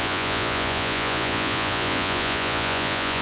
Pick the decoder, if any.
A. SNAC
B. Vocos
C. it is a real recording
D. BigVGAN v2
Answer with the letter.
B